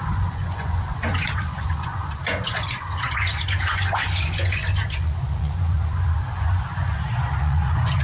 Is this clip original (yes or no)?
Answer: no